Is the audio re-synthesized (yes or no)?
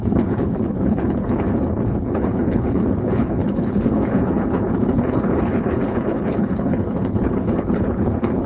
yes